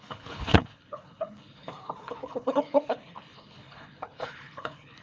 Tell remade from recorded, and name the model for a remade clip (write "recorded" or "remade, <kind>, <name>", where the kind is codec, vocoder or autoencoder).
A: remade, codec, HILCodec